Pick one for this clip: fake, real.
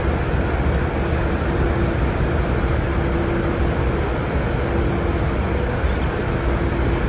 real